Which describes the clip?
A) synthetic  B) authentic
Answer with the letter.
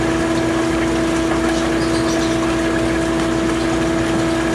B